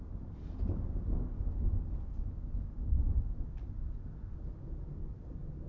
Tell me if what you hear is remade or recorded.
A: recorded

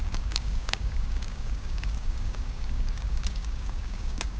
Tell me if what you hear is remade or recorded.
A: remade